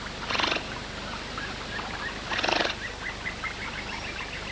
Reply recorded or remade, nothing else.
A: recorded